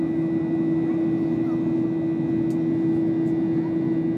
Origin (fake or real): real